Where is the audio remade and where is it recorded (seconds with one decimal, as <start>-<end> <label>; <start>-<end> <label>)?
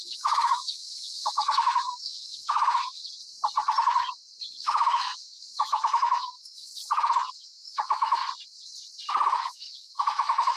0.0-3.0 remade; 3.0-4.5 recorded; 4.5-6.7 remade; 6.7-7.3 recorded; 7.3-8.2 remade; 8.2-9.1 recorded; 9.1-10.6 remade